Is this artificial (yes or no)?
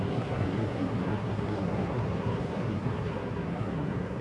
yes